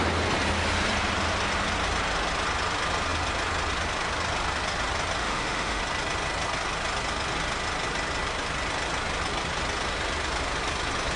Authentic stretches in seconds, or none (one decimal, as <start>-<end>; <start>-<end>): 0.0-5.2; 5.8-11.2